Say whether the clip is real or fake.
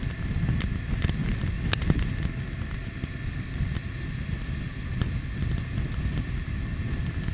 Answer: real